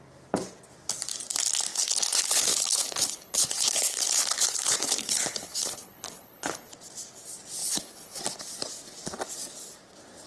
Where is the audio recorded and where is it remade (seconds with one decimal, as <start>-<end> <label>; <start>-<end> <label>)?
0.0-1.7 recorded; 1.7-6.7 remade; 6.7-7.6 recorded; 7.6-8.2 remade; 8.2-10.3 recorded